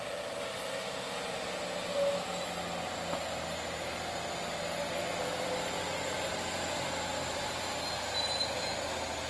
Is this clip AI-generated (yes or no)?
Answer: no